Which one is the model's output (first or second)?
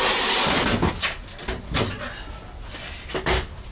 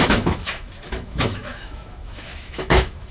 second